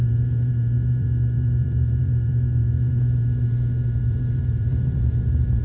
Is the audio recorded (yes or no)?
no